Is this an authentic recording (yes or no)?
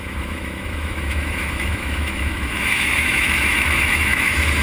no